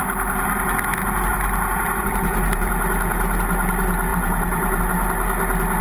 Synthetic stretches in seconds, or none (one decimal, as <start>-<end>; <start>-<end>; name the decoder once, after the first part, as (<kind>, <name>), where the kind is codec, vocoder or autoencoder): 1.3-2.7 (vocoder, BigVGAN v2); 4.1-4.8